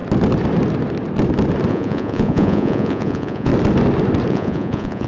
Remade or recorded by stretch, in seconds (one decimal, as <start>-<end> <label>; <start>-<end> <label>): 0.0-1.7 recorded; 1.7-3.5 remade; 3.5-4.3 recorded; 4.3-5.1 remade